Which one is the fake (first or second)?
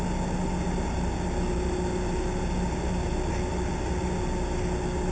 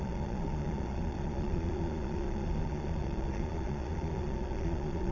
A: second